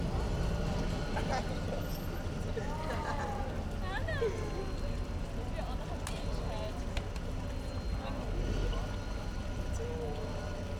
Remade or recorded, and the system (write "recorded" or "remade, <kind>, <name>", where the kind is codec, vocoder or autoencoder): recorded